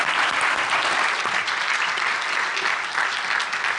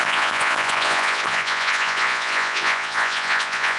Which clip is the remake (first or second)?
second